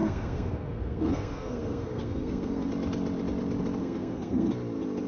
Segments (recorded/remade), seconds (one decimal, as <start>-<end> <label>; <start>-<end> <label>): 0.0-2.7 remade; 2.7-3.8 recorded; 3.8-4.5 remade; 4.5-5.1 recorded